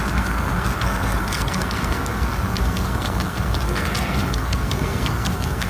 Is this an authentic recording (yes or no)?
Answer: no